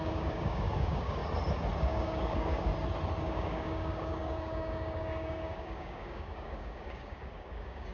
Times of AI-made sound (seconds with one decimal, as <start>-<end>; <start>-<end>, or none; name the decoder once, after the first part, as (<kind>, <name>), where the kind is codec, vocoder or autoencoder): 0.0-1.2 (codec, DAC); 1.8-2.7; 3.2-7.9